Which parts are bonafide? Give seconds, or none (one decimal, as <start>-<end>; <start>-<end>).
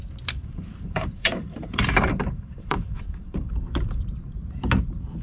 0.0-0.4; 3.5-5.2